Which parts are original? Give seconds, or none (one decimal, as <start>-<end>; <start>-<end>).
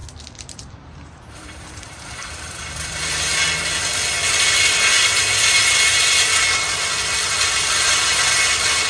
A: 0.0-0.5; 3.3-7.6